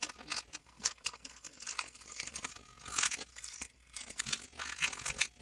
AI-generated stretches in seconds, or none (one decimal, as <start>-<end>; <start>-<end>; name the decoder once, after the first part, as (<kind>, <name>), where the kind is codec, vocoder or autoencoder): 0.6-2.5 (codec, SNAC); 3.3-4.2